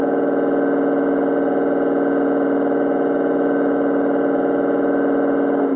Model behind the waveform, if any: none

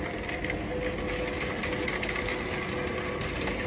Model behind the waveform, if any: none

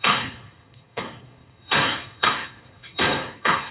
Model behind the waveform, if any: codec, SNAC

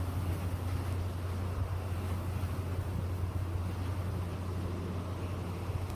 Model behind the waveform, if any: none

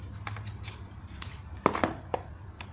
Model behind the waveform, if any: none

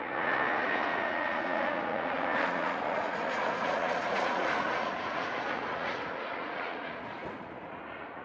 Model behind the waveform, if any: vocoder, Vocos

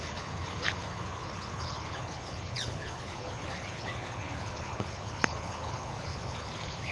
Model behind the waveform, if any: codec, HILCodec